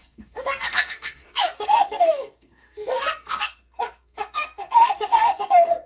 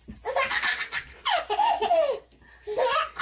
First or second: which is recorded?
second